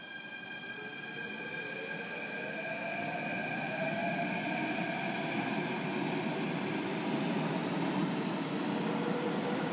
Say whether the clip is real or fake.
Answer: real